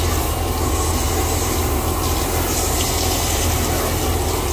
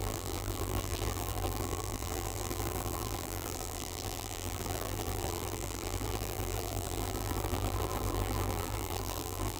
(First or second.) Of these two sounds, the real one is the first